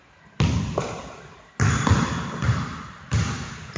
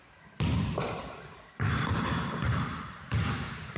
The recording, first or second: first